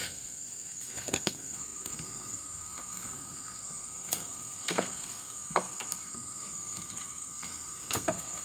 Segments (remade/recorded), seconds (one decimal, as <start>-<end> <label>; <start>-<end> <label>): 0.0-8.4 remade